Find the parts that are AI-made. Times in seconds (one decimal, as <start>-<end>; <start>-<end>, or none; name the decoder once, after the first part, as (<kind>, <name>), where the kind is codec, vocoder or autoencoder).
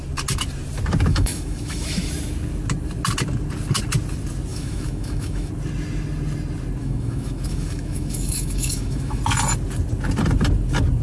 1.1-2.1 (autoencoder, DAC-VAE); 4.5-5.5; 6.8-9.2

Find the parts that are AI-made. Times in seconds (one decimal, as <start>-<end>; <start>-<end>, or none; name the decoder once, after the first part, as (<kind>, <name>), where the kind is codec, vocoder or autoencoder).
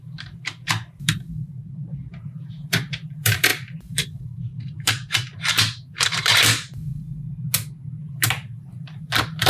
0.0-6.9 (vocoder, BigVGAN v2); 8.1-9.5